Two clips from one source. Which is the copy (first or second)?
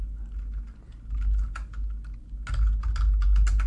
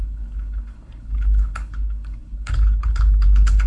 second